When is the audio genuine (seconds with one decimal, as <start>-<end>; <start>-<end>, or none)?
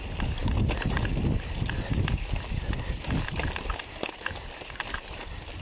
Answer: 0.0-5.6